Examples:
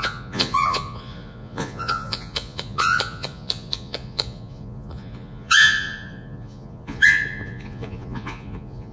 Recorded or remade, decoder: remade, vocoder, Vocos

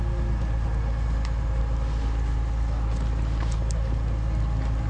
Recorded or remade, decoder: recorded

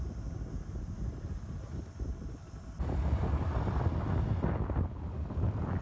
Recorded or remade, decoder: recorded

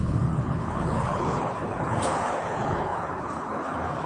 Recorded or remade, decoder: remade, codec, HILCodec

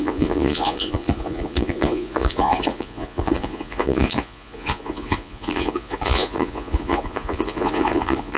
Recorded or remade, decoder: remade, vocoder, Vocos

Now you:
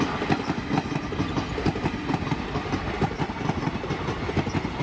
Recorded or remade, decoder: recorded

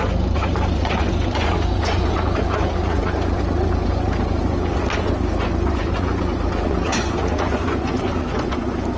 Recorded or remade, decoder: remade, vocoder, Vocos